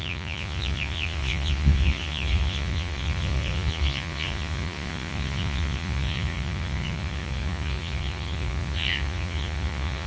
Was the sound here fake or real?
fake